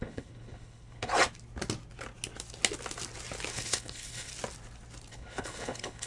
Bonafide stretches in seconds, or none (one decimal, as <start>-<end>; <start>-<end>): 1.1-3.5; 4.3-5.1